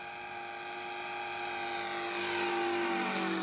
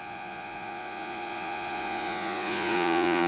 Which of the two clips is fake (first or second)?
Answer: second